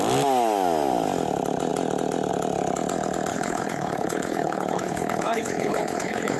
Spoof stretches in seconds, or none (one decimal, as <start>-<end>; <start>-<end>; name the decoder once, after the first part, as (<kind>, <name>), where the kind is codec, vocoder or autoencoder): 3.3-6.4 (codec, HILCodec)